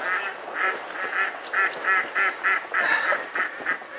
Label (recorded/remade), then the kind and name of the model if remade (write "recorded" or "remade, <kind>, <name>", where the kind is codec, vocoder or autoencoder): recorded